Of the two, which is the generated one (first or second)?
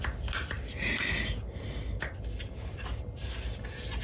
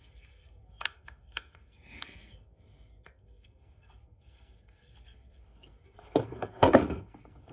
second